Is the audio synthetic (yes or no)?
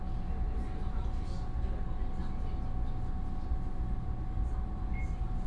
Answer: no